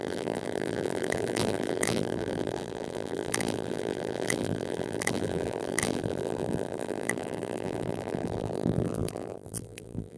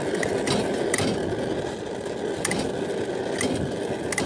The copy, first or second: first